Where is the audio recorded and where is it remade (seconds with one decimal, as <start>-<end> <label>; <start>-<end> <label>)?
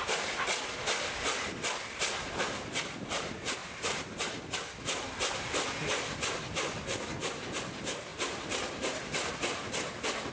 0.0-3.6 recorded; 3.6-4.4 remade; 4.4-8.1 recorded; 8.1-9.3 remade; 9.3-10.3 recorded